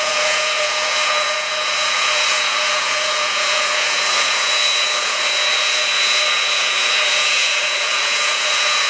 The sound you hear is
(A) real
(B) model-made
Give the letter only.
B